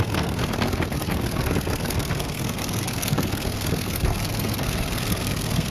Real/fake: fake